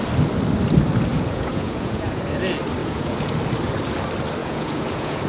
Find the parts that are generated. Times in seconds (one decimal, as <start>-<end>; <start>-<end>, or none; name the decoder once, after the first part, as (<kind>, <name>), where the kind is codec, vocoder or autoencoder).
1.1-2.2 (vocoder, Vocos); 2.8-3.3; 4.4-5.3